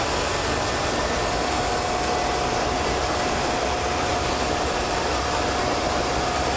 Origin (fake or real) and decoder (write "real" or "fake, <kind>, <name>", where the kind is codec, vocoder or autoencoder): real